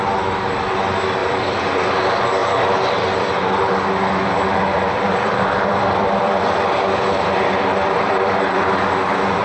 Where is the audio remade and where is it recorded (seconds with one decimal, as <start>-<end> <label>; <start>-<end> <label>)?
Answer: 0.0-1.2 recorded; 1.2-2.0 remade; 2.0-2.4 recorded; 2.4-3.7 remade; 3.7-4.7 recorded; 4.7-8.6 remade; 8.6-9.4 recorded